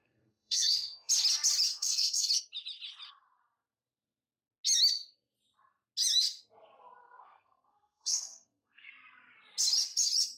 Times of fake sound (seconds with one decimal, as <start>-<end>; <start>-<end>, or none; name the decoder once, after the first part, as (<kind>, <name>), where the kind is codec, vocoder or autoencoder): 0.0-1.1 (codec, SNAC); 1.7-2.3; 7.0-8.9